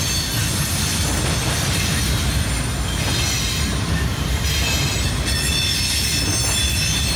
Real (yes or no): yes